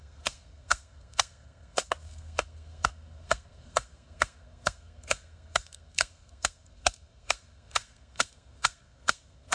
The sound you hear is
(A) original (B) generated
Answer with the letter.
B